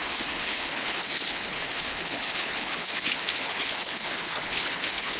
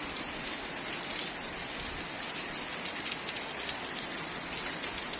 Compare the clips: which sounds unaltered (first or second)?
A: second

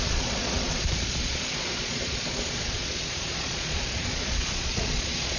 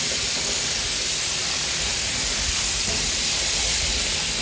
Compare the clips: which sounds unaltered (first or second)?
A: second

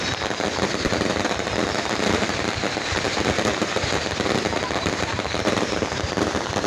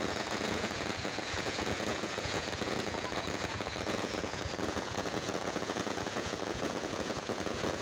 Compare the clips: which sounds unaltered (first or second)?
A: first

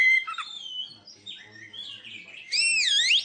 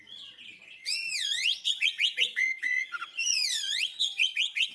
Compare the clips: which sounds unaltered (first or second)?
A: first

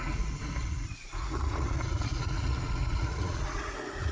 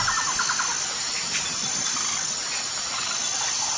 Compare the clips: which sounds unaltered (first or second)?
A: second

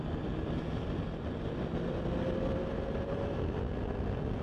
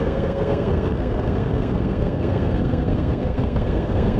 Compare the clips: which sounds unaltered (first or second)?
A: first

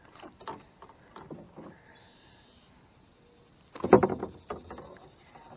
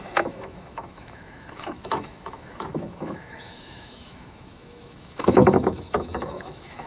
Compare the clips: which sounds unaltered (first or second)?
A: first